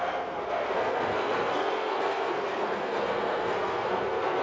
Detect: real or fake fake